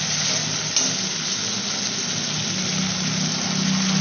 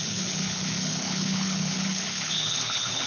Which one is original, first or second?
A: first